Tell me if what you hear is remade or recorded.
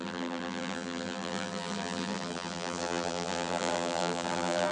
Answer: remade